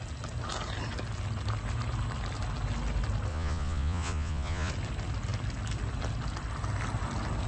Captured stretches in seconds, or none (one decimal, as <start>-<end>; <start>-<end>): 0.0-3.3; 4.7-7.5